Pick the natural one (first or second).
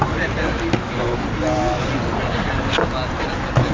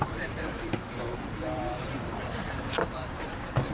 first